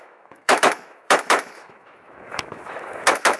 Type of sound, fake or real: fake